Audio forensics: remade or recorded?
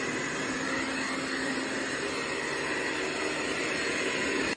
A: recorded